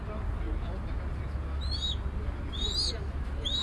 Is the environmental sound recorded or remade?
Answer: recorded